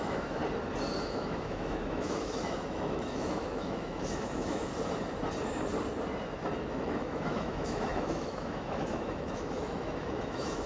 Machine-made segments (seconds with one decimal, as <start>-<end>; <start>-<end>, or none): 0.0-0.4; 1.0-4.7; 6.7-10.7